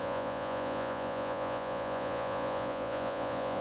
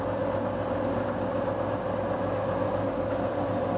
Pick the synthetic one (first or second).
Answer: first